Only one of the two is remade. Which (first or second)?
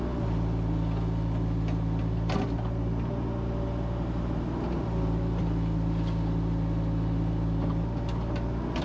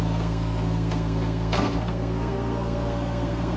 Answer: second